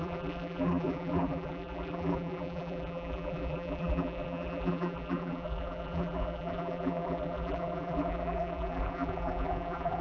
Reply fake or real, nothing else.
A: fake